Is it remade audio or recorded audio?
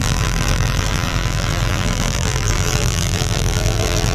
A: remade